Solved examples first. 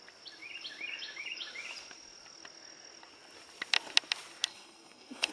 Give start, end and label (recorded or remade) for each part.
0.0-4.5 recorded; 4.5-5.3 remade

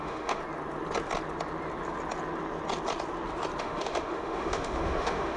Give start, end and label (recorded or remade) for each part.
0.0-0.4 remade; 0.4-3.6 recorded; 3.6-5.4 remade

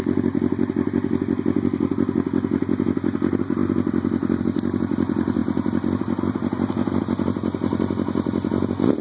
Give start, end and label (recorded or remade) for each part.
0.0-9.0 recorded

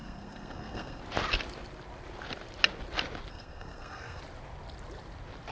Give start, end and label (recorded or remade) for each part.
0.0-1.0 remade; 1.0-3.3 recorded; 3.3-4.2 remade; 4.2-5.5 recorded